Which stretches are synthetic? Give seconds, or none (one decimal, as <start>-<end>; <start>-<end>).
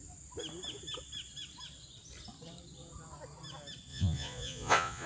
3.9-5.1